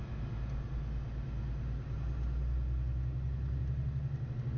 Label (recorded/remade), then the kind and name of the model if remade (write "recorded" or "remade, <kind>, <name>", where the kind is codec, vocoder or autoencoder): recorded